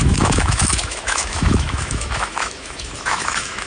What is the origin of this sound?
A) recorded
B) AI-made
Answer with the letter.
B